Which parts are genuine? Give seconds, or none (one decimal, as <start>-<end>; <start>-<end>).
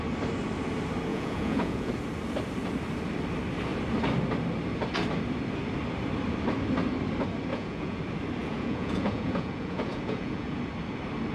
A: 0.0-1.1; 1.9-7.5; 8.0-8.4; 10.6-11.3